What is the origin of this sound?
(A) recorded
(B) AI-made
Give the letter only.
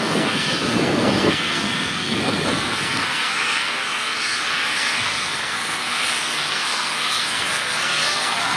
B